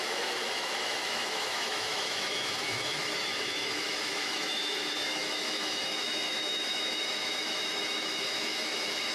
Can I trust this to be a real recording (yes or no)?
no